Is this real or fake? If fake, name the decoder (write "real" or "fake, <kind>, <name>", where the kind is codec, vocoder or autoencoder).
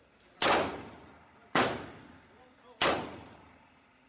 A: fake, vocoder, BigVGAN v2